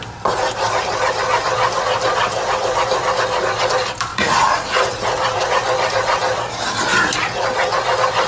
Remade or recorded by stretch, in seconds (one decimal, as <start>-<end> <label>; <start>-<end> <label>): 0.0-4.1 recorded; 4.1-4.9 remade; 4.9-8.3 recorded